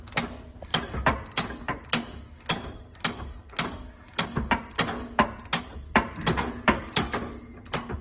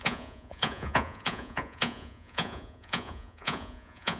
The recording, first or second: first